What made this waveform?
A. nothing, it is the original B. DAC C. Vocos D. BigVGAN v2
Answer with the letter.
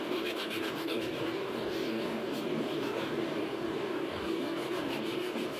B